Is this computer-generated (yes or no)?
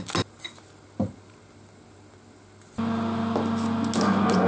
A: no